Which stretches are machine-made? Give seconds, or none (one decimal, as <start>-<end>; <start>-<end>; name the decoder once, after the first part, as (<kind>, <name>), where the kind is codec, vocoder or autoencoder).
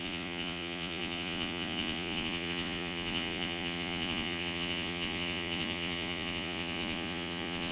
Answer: 0.0-7.7 (vocoder, Vocos)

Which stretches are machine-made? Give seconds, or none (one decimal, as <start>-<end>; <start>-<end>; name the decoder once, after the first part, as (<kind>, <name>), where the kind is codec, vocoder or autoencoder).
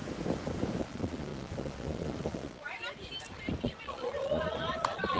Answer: 0.8-2.8 (vocoder, Vocos); 3.6-5.2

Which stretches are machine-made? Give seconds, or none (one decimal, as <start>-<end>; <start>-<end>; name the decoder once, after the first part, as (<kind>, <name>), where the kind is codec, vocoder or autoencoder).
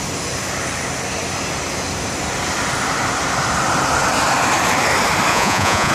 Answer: 5.3-5.9 (vocoder, Vocos)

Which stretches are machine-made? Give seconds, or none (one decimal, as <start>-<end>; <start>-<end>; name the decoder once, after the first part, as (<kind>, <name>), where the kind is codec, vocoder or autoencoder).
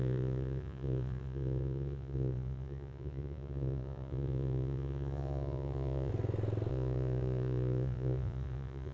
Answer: 0.0-6.1 (vocoder, Vocos); 6.7-8.9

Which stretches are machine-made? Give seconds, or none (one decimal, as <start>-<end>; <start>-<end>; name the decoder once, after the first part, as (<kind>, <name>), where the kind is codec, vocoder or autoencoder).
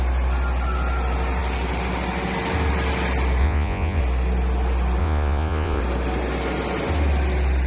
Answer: 3.4-4.0 (vocoder, Vocos); 5.0-5.8